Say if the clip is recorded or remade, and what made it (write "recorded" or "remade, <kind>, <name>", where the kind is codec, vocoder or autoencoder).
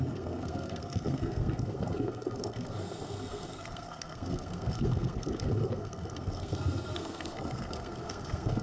remade, codec, SNAC